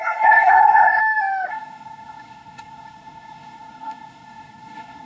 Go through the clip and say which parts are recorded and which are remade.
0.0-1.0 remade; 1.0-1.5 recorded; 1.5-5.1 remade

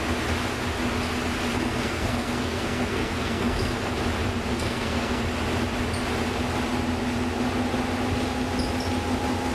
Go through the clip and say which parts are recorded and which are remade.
0.0-1.5 recorded; 1.5-3.9 remade; 3.9-4.5 recorded; 4.5-5.2 remade; 5.2-9.5 recorded